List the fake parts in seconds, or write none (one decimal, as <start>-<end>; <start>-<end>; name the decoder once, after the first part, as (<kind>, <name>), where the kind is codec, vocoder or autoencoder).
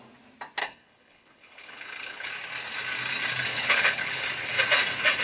0.6-2.3 (codec, HILCodec); 3.5-4.2